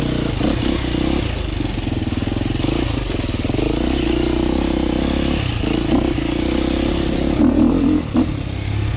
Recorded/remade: recorded